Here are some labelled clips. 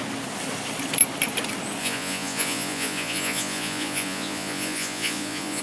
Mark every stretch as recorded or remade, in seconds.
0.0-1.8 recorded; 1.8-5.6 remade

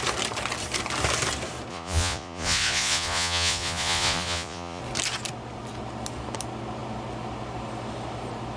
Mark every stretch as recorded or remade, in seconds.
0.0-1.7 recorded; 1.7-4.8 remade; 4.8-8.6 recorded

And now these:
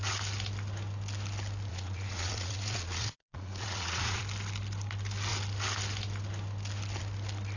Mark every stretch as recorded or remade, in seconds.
0.0-1.7 recorded; 1.7-4.2 remade; 4.2-7.6 recorded

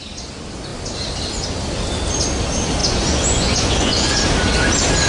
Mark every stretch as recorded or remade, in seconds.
0.0-2.8 recorded; 2.8-4.2 remade; 4.2-5.1 recorded